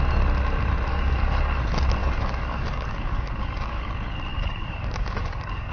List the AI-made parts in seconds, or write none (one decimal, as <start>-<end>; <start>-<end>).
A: 0.9-1.6; 2.0-3.9; 4.3-5.7